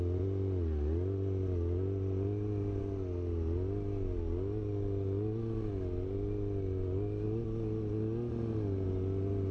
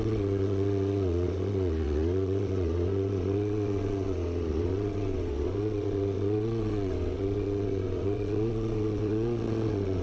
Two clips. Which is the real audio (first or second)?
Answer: first